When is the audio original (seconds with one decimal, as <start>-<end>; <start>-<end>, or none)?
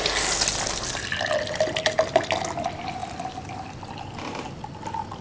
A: 0.0-5.2